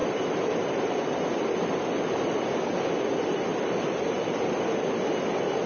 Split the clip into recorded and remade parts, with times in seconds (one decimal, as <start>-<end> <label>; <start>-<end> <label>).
0.0-5.7 recorded